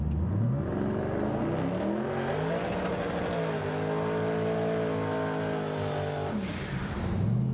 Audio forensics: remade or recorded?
recorded